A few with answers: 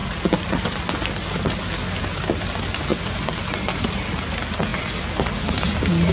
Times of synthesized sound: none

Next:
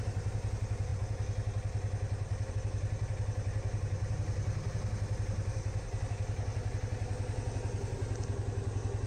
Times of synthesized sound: none

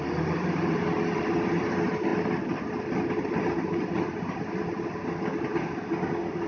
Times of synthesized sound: none

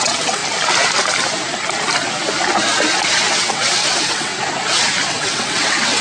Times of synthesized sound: 0.0-0.4 (vocoder, WaveNeXt); 3.3-4.3; 5.1-6.0

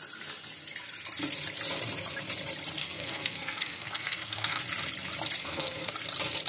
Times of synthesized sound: 2.8-4.6 (codec, SNAC); 5.4-5.9

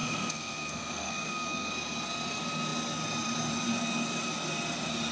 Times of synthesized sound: 0.0-1.7 (codec, SNAC)